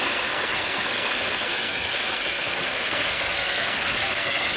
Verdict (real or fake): fake